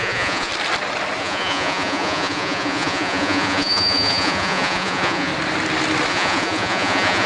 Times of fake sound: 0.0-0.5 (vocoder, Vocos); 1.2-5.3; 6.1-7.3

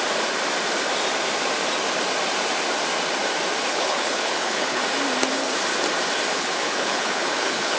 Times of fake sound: 3.7-4.8 (codec, HILCodec); 6.3-7.8

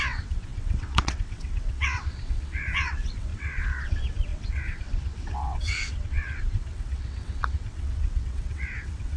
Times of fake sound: 0.0-9.2 (vocoder, WaveNeXt)